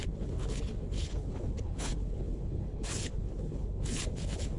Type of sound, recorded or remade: remade